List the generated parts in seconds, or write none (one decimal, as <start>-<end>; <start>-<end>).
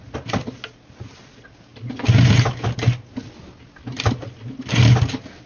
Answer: none